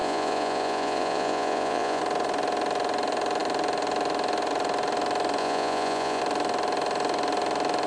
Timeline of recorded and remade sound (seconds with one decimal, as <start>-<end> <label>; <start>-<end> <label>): 0.0-2.0 remade; 2.0-5.4 recorded; 5.4-6.2 remade; 6.2-7.9 recorded